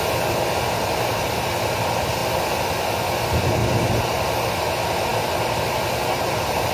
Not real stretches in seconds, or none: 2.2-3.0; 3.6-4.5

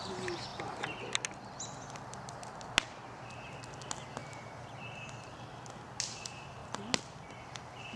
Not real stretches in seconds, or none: 0.5-1.0; 4.2-5.7

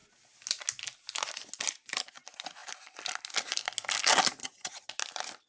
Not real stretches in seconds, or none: 4.4-4.9

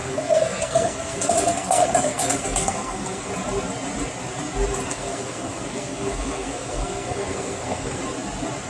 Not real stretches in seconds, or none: 0.0-3.3; 4.9-8.0

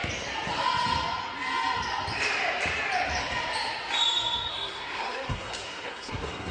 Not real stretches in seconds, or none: 4.5-6.5